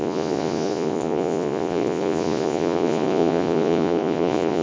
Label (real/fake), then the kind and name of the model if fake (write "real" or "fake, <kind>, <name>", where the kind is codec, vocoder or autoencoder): fake, vocoder, Vocos